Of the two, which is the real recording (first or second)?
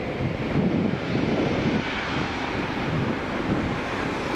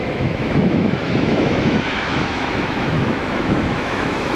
first